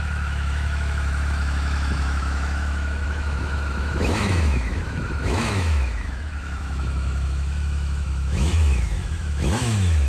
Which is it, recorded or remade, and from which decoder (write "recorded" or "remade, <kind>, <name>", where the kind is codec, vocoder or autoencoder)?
remade, autoencoder, DAC-VAE